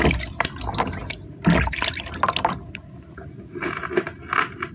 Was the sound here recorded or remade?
recorded